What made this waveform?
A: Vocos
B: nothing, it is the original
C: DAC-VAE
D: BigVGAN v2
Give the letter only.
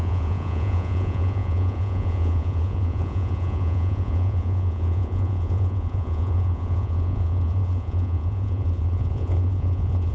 A